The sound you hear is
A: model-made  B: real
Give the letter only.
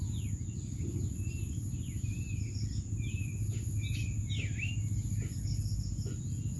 B